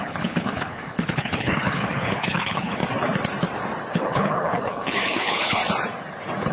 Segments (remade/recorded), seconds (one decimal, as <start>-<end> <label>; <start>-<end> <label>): 0.0-2.8 remade; 2.8-3.9 recorded; 3.9-5.6 remade; 5.6-6.5 recorded